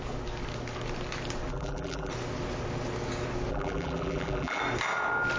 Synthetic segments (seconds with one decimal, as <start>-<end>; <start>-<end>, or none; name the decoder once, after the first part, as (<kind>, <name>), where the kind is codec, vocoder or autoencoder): 1.5-2.1 (vocoder, BigVGAN v2); 3.5-4.6